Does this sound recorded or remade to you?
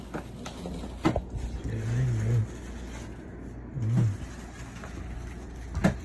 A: recorded